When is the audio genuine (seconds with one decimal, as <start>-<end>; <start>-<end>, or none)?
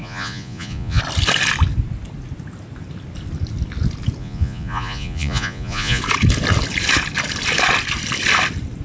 1.0-4.2; 6.0-8.8